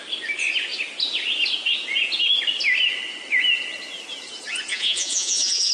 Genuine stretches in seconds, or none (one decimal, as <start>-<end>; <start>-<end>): 0.0-4.7